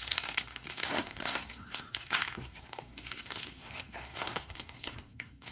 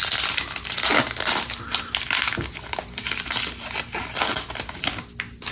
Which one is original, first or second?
second